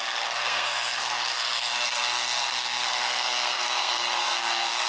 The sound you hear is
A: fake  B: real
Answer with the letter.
A